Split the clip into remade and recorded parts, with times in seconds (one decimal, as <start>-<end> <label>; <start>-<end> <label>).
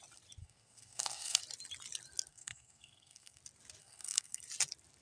0.0-0.4 recorded; 0.4-1.4 remade; 1.4-2.3 recorded; 2.3-3.4 remade; 3.4-3.8 recorded; 3.8-4.4 remade; 4.4-5.0 recorded